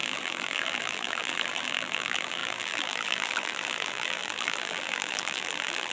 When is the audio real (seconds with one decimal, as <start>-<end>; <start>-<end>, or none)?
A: none